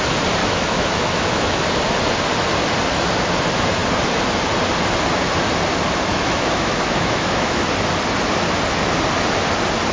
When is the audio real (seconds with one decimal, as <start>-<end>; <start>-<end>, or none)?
0.0-0.4; 1.6-6.1; 7.6-9.9